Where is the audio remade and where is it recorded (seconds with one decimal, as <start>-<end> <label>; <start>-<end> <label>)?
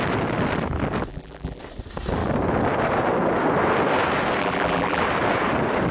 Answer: 0.0-1.1 recorded; 1.1-1.6 remade; 1.6-4.4 recorded; 4.4-5.0 remade; 5.0-5.9 recorded